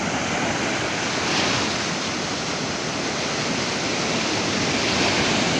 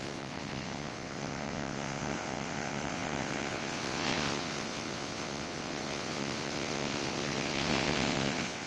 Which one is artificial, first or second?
second